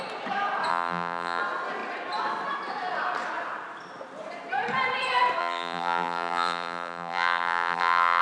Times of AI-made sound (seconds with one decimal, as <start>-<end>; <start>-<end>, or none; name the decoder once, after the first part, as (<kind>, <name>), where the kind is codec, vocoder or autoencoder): 0.7-1.4 (vocoder, BigVGAN v2); 5.4-8.2